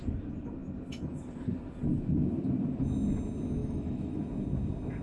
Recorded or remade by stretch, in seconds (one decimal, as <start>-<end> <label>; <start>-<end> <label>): 0.0-3.6 recorded; 3.6-4.2 remade; 4.2-5.0 recorded